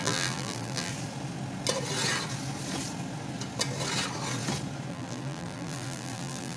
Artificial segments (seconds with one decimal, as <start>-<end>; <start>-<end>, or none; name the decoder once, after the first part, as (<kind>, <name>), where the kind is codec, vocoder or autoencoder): 0.0-0.9 (vocoder, BigVGAN v2); 4.9-6.6